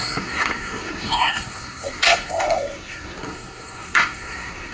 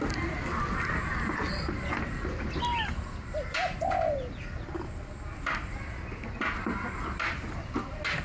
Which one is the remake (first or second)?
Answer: first